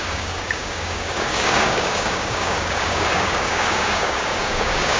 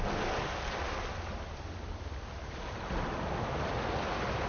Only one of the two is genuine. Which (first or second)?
second